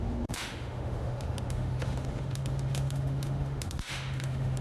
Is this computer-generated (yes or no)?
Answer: yes